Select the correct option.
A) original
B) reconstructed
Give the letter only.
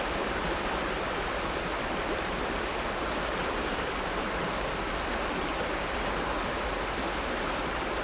B